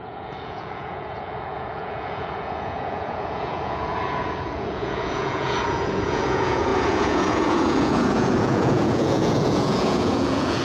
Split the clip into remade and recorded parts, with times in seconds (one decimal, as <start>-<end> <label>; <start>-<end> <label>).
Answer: 0.0-10.6 remade